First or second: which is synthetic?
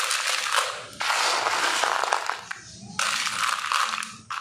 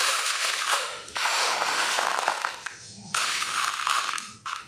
second